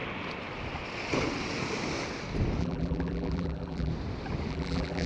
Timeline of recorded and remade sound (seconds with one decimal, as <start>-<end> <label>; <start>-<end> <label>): 0.0-2.6 recorded; 2.6-3.9 remade; 3.9-4.5 recorded; 4.5-5.1 remade